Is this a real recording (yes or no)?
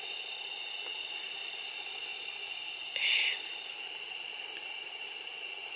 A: yes